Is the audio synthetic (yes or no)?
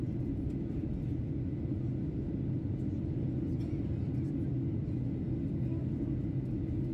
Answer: no